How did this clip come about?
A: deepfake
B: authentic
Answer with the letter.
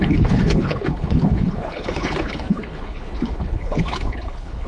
A